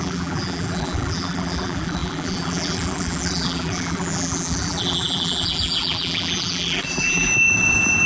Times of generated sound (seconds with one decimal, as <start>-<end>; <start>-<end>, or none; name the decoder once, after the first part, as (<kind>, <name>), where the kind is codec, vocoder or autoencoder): 0.0-7.3 (vocoder, BigVGAN v2)